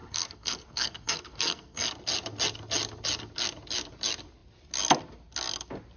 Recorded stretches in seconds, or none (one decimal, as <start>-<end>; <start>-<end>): 1.9-6.0